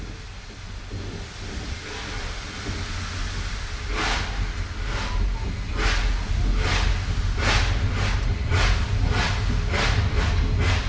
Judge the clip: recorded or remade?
recorded